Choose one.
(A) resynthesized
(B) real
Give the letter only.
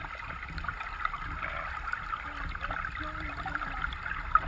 B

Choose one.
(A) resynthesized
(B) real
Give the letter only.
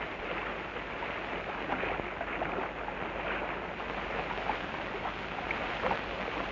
B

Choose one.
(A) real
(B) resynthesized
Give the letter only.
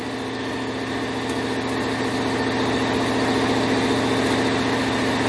A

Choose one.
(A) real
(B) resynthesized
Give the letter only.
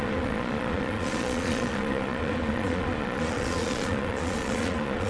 B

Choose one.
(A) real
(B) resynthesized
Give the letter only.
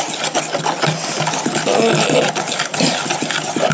A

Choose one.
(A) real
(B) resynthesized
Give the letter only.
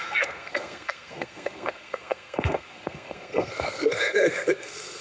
B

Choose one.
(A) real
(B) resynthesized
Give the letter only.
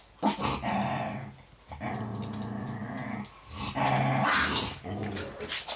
A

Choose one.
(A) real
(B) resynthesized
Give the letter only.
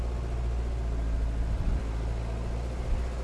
A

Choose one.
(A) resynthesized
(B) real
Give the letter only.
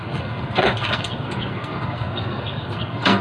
A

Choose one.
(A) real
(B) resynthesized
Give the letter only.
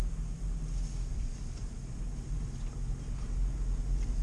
A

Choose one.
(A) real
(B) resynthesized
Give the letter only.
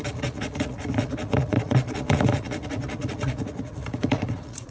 B